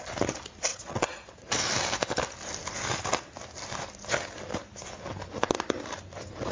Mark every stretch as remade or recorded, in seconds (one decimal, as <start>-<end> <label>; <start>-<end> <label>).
0.0-0.7 recorded; 0.7-1.5 remade; 1.5-6.5 recorded